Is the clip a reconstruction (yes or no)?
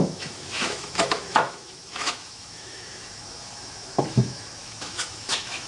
yes